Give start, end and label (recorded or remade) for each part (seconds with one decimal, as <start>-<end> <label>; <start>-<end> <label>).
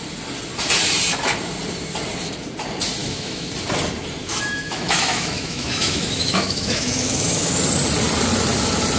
0.0-3.0 recorded; 3.0-3.5 remade; 3.5-4.2 recorded; 4.2-7.6 remade; 7.6-9.0 recorded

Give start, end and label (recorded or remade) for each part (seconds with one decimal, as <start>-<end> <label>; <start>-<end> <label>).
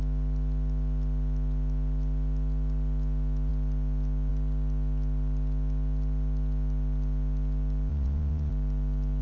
0.0-7.9 recorded; 7.9-8.5 remade; 8.5-9.2 recorded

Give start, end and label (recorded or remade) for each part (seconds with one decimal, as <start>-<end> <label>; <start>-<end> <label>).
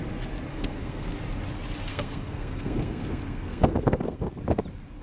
0.0-0.5 recorded; 0.5-1.1 remade; 1.1-1.9 recorded; 1.9-4.4 remade; 4.4-5.0 recorded